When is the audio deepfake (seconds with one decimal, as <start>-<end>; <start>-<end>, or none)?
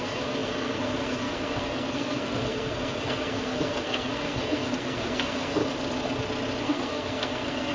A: 0.0-5.6; 6.6-7.7